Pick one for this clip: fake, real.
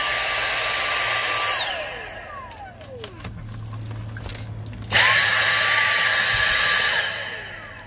real